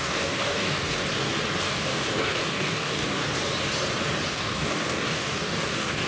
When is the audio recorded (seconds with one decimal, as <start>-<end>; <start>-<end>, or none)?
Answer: 1.0-1.6; 3.2-4.3